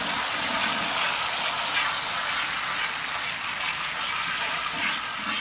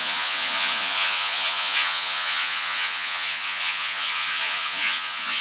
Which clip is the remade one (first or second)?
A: second